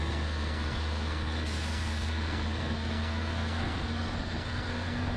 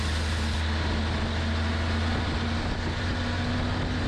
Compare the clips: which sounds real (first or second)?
second